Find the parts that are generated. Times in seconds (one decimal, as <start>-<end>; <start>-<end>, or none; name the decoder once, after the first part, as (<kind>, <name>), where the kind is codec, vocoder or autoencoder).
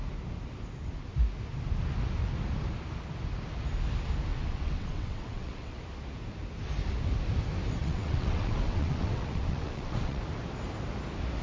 4.3-5.8 (vocoder, WaveNeXt); 7.8-10.2